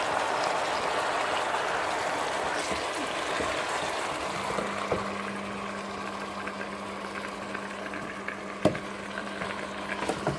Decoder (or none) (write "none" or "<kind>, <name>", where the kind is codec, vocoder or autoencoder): none